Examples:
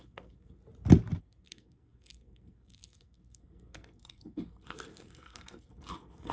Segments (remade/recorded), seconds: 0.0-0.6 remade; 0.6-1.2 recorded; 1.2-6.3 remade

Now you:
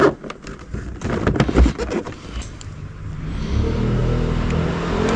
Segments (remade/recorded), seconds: 0.0-5.2 recorded

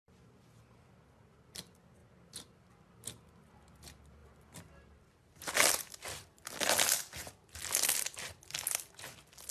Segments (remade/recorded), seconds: 0.0-9.5 recorded

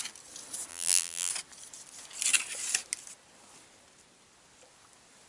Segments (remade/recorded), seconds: 0.0-0.7 recorded; 0.7-1.3 remade; 1.3-5.3 recorded

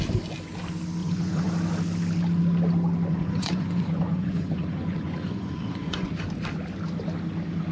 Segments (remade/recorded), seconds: 0.0-1.0 recorded; 1.0-1.5 remade; 1.5-3.1 recorded; 3.1-6.1 remade; 6.1-7.7 recorded

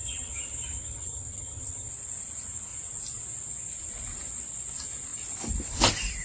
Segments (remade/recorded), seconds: 0.0-1.9 remade; 1.9-6.2 recorded

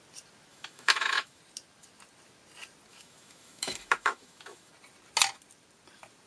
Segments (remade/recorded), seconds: 0.0-0.5 recorded; 0.5-1.4 remade; 1.4-2.9 recorded; 2.9-4.7 remade; 4.7-6.3 recorded